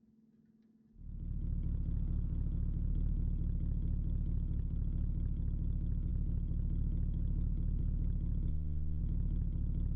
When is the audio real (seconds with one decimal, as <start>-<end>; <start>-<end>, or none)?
0.0-8.5; 9.0-10.0